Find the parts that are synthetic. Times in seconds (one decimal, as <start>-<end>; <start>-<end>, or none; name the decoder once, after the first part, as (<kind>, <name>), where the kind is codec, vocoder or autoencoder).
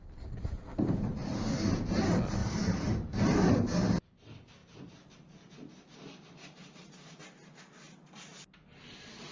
0.7-1.4 (vocoder, BigVGAN v2); 2.4-3.5; 4.6-7.2